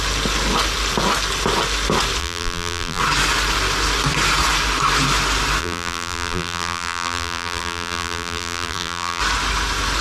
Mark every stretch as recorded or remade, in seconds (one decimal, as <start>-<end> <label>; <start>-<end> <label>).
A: 0.0-2.2 recorded; 2.2-3.0 remade; 3.0-5.6 recorded; 5.6-9.2 remade; 9.2-10.0 recorded